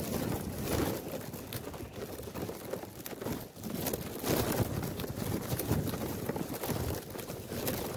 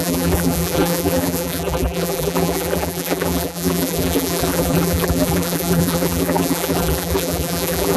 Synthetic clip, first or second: second